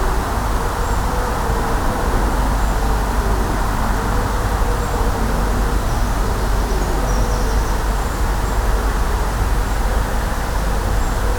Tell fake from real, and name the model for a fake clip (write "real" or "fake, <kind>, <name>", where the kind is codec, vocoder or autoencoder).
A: real